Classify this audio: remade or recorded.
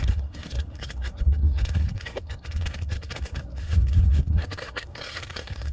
remade